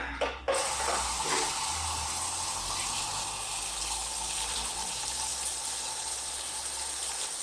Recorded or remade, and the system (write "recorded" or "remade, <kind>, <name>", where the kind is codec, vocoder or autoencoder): recorded